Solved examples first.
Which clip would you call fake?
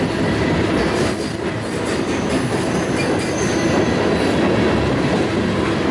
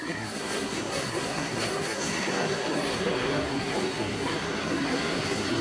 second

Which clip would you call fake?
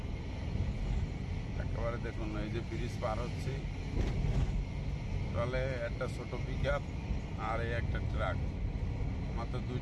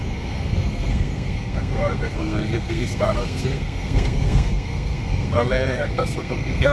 second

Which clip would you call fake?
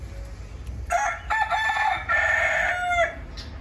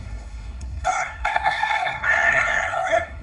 second